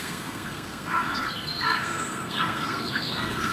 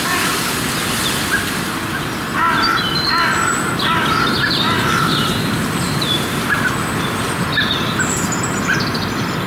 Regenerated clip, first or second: first